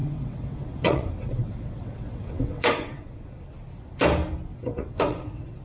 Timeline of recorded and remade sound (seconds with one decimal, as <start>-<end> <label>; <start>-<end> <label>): 0.0-3.4 remade; 3.4-4.5 recorded; 4.5-5.6 remade